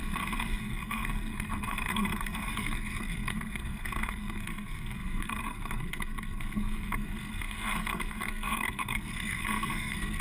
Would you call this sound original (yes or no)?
no